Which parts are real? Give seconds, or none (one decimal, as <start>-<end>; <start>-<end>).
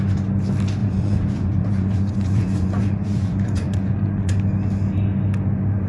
0.0-0.8; 4.3-5.9